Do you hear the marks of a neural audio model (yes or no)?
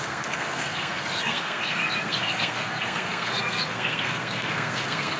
yes